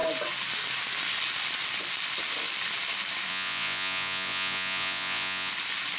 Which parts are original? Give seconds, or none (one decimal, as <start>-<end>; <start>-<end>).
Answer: 0.0-3.3; 5.5-6.0